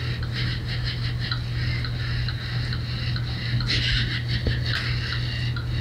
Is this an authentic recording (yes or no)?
yes